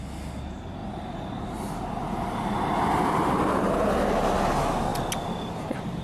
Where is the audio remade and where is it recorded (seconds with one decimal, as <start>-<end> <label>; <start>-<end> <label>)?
0.0-0.8 recorded; 0.8-3.3 remade; 3.3-6.0 recorded